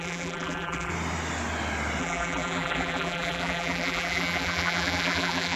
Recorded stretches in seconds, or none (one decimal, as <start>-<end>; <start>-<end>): 0.9-2.0